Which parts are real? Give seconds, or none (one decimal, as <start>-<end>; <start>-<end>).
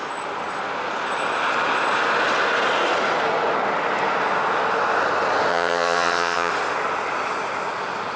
0.0-5.5; 6.5-8.2